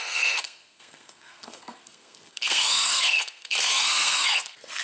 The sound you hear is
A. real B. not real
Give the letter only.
B